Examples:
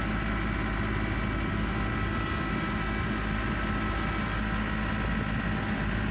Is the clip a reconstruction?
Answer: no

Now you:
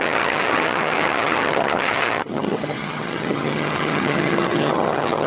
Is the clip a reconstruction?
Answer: yes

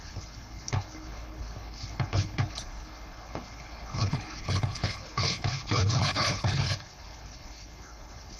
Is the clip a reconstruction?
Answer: yes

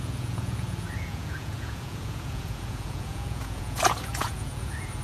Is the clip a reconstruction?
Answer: yes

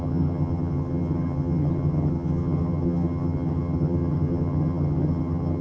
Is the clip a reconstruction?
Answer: yes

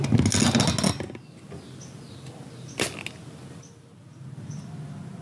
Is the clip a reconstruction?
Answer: no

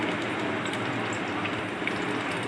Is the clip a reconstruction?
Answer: no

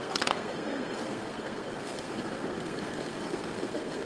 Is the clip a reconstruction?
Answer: yes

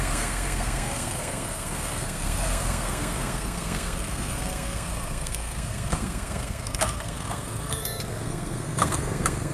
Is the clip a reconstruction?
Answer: yes